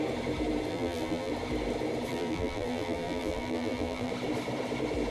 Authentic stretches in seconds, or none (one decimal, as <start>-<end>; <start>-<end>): 0.0-0.7; 1.3-2.1; 4.1-5.1